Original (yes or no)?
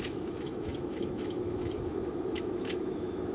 no